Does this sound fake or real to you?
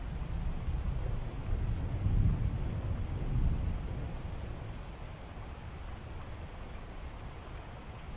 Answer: real